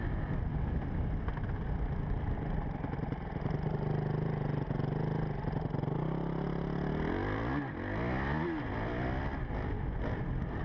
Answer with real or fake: real